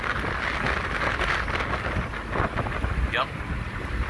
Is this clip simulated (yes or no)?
no